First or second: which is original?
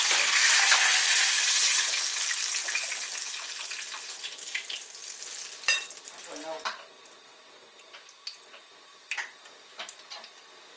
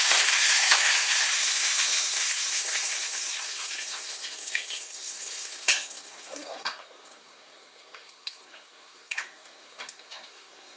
first